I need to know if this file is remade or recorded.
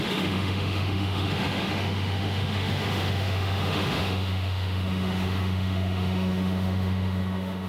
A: remade